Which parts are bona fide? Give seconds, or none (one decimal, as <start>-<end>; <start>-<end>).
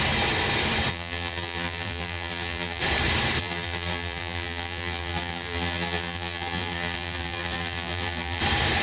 0.0-0.9; 2.8-3.4; 8.4-8.8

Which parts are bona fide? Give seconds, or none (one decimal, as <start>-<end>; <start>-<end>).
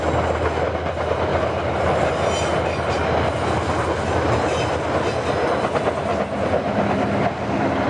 0.0-1.3; 2.1-7.9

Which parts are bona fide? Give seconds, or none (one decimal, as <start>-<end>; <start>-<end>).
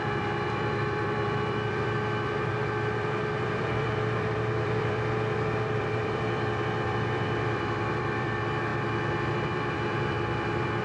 8.7-9.3